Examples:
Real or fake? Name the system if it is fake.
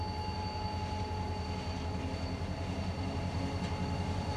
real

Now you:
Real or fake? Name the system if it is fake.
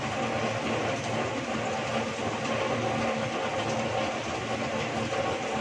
real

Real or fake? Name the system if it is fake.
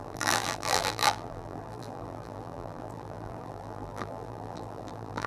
fake, vocoder, BigVGAN v2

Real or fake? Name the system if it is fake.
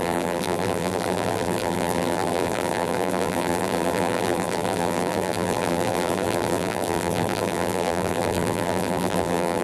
fake, vocoder, BigVGAN v2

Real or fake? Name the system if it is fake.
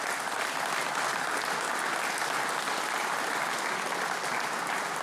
real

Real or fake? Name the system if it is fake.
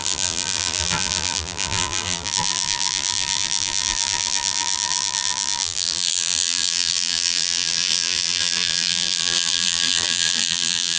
fake, vocoder, BigVGAN v2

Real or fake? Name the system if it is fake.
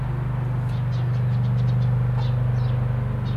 real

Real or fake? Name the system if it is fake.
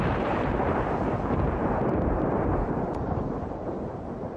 fake, vocoder, BigVGAN v2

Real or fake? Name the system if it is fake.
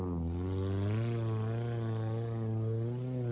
real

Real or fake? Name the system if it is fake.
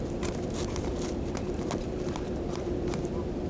fake, vocoder, BigVGAN v2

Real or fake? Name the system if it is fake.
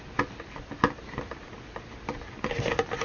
real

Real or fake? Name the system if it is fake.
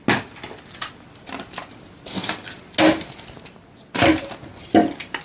real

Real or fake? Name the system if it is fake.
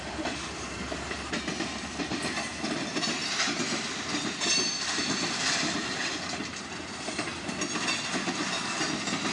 fake, vocoder, BigVGAN v2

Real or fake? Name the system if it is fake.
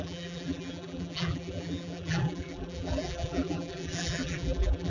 fake, vocoder, BigVGAN v2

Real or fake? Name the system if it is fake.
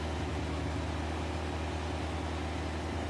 real